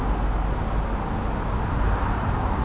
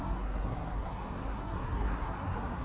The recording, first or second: first